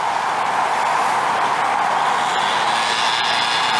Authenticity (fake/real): real